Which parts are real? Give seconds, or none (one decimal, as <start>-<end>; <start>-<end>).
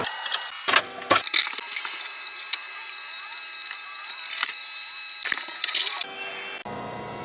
0.0-7.2